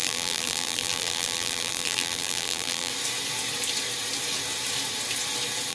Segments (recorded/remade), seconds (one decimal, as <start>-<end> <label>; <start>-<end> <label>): 0.0-2.9 remade; 2.9-5.7 recorded